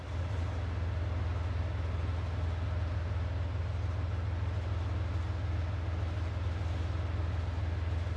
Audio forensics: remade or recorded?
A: recorded